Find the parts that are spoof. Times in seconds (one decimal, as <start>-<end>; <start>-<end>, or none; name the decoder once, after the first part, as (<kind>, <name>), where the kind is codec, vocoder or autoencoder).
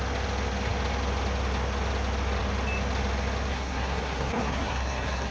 3.5-5.3 (codec, SNAC)